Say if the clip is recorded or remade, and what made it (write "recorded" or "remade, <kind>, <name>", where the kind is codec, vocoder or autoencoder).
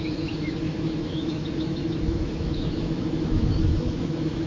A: remade, autoencoder, DAC-VAE